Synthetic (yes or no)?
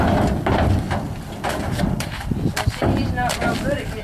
no